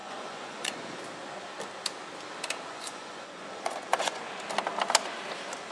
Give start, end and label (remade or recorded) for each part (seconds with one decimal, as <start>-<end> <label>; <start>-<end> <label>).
0.0-1.0 remade; 1.0-2.7 recorded; 2.7-4.2 remade; 4.2-5.7 recorded